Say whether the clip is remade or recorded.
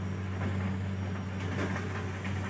recorded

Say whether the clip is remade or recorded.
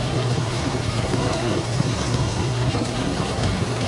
remade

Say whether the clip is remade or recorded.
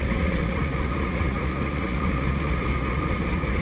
remade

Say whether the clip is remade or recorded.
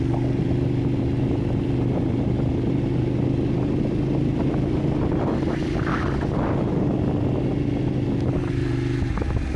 recorded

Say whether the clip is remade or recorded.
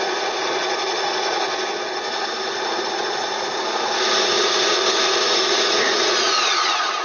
remade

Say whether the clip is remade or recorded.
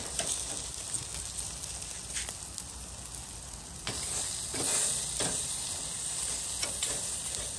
recorded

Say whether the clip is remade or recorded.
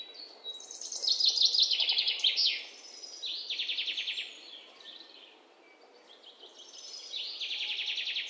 recorded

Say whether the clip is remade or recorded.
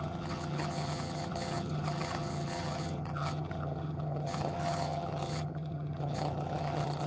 remade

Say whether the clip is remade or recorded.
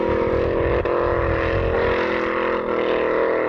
recorded